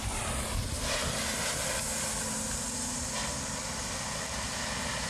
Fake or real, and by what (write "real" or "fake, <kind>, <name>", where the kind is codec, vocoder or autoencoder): real